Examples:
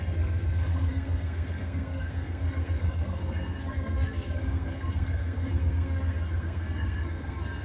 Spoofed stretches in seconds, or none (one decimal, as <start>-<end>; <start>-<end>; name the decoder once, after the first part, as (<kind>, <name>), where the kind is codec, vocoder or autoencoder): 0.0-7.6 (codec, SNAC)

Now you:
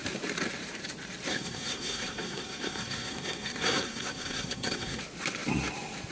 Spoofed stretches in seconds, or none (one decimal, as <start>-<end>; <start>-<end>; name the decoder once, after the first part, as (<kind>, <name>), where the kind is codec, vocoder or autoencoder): 1.3-5.0 (codec, SNAC)

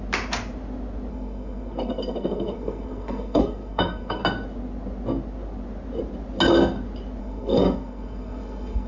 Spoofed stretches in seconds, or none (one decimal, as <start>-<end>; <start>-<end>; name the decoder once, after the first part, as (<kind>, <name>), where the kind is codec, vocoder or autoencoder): 1.1-4.2 (codec, SNAC); 7.2-8.9

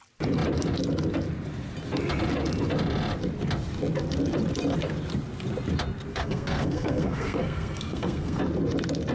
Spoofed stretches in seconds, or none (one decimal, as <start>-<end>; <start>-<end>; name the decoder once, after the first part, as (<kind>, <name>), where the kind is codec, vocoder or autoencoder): 6.1-8.4 (codec, SNAC)

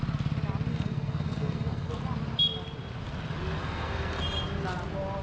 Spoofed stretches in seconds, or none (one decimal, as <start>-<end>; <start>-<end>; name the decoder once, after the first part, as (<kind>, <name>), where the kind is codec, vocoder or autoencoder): 0.7-1.9 (codec, SNAC); 3.6-4.2